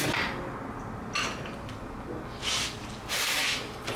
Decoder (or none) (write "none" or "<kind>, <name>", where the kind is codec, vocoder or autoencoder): none